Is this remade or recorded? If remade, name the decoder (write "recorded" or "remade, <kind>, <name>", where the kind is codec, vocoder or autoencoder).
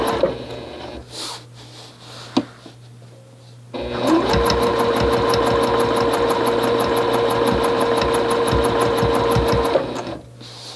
recorded